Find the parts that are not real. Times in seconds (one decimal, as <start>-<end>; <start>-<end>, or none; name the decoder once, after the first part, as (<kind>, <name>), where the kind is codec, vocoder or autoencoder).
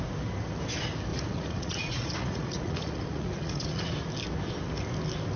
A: 1.1-4.1 (vocoder, Vocos)